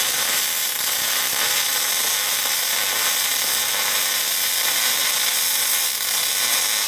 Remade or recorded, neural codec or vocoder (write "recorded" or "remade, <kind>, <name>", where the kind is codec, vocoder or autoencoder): recorded